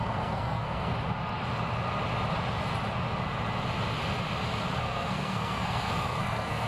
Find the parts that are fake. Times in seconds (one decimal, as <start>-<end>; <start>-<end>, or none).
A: 0.0-0.9; 4.8-6.7